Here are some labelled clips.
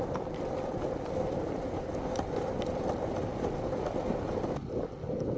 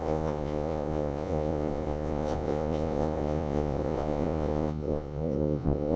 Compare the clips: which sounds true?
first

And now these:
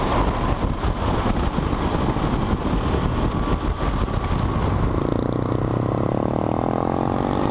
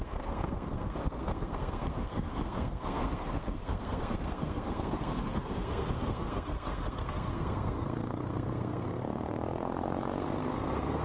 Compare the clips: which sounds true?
first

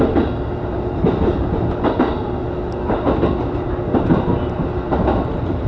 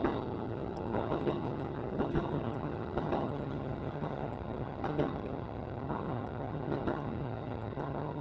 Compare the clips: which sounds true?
first